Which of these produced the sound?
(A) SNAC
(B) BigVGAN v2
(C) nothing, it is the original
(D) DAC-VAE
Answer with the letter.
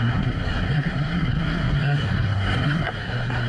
A